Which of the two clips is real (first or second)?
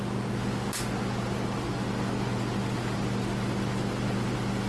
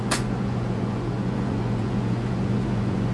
first